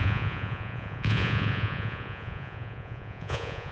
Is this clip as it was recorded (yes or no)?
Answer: no